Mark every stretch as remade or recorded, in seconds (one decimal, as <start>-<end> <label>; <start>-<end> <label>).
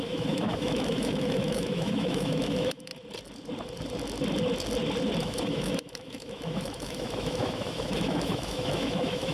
0.0-2.9 remade; 2.9-5.2 recorded; 5.2-9.3 remade